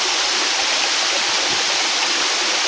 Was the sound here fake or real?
real